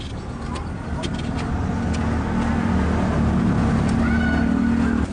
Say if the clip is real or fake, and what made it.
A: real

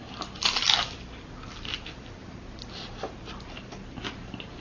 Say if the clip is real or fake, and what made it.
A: real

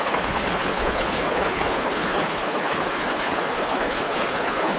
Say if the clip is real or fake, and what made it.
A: fake, codec, HILCodec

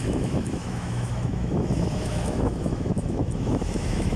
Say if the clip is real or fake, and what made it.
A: fake, autoencoder, DAC-VAE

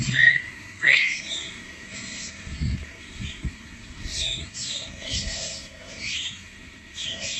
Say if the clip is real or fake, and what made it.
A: fake, codec, SNAC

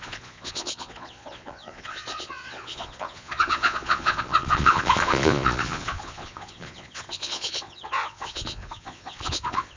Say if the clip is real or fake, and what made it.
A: fake, vocoder, Vocos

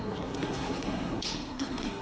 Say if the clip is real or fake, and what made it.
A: fake, codec, SNAC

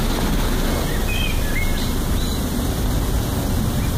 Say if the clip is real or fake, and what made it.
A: real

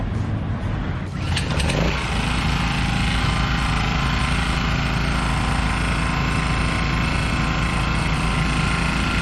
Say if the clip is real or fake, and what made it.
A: real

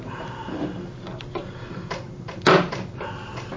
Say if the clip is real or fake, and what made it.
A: real